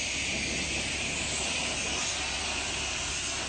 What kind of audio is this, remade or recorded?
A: recorded